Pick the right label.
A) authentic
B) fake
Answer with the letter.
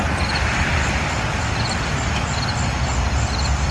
A